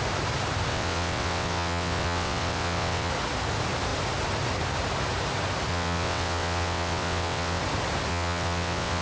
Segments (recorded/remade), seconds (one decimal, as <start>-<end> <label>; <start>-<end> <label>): 0.0-0.7 recorded; 0.7-3.1 remade; 3.1-5.7 recorded; 5.7-7.6 remade; 7.6-8.1 recorded; 8.1-9.0 remade